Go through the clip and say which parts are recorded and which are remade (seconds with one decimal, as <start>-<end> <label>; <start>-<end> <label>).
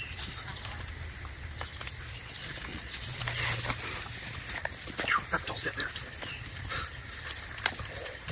0.0-2.7 recorded; 2.7-3.2 remade; 3.2-8.3 recorded